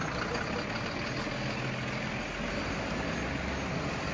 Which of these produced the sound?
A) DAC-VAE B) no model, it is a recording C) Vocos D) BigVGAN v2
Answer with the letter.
B